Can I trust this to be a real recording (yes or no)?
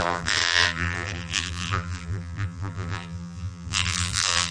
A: no